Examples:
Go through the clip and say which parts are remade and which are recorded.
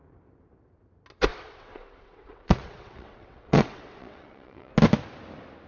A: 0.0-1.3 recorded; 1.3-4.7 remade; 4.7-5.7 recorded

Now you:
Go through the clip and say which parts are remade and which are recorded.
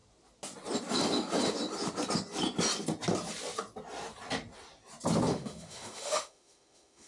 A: 0.0-5.3 recorded; 5.3-7.1 remade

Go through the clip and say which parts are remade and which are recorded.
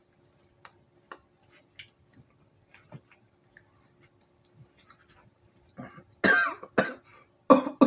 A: 0.0-7.9 recorded